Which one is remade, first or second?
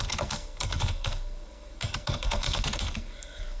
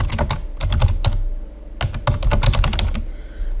first